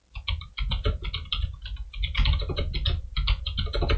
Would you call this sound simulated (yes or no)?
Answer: no